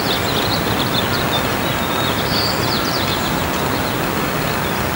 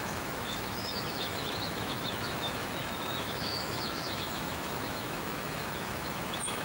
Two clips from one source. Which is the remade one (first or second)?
second